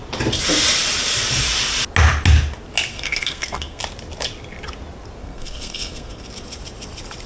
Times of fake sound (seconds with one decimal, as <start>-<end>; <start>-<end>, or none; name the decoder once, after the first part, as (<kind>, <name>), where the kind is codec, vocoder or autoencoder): 2.9-3.8 (codec, SNAC); 5.2-6.3